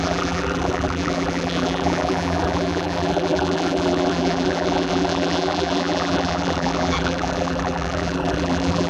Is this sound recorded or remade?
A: remade